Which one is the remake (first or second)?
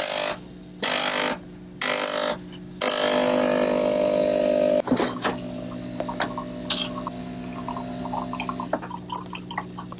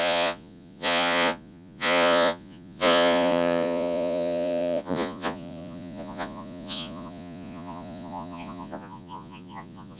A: second